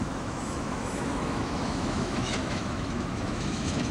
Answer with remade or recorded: remade